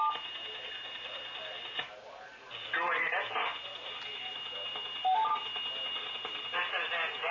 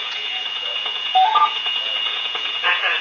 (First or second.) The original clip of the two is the first